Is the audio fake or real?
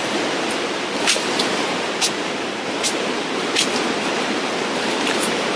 fake